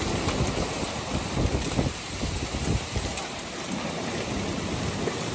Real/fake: real